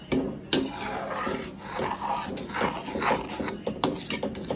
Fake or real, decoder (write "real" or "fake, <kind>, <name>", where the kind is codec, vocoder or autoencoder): real